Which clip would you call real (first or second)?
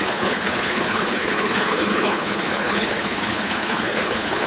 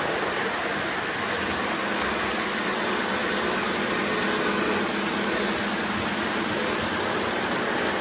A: second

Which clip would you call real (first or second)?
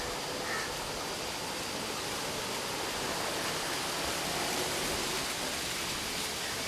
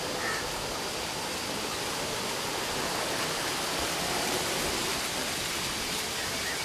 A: first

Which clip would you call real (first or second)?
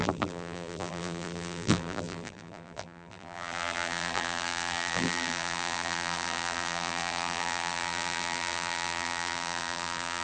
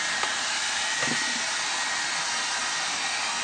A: second